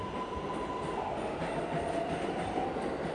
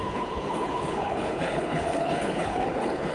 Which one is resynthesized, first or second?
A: second